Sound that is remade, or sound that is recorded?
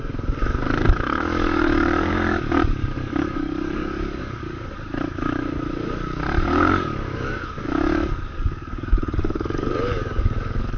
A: remade